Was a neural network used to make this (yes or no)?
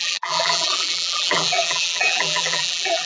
yes